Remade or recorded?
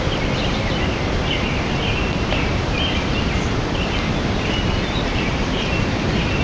recorded